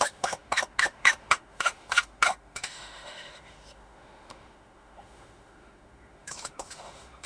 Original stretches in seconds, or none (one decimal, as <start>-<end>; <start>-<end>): none